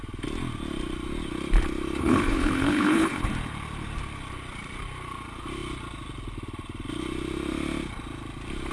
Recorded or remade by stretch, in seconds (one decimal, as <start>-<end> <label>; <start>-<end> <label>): 0.0-2.0 recorded; 2.0-3.3 remade; 3.3-8.7 recorded